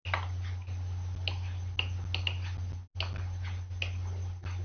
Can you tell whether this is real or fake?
real